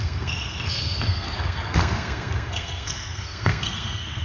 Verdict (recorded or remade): remade